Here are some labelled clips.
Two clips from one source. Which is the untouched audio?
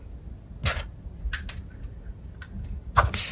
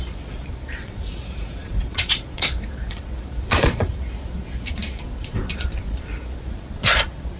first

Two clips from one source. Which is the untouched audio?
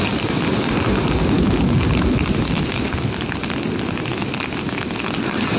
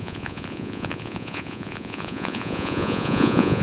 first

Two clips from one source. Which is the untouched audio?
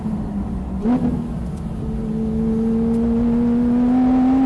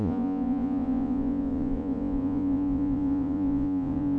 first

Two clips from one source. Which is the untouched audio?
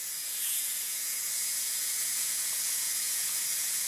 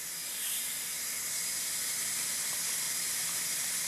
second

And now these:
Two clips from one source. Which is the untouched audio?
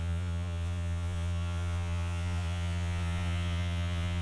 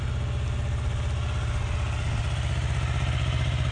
second